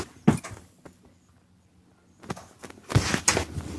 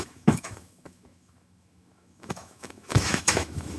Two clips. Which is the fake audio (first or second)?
second